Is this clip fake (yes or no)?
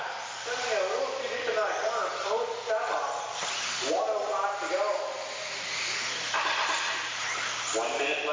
no